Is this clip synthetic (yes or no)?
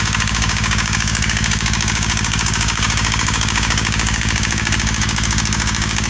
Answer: yes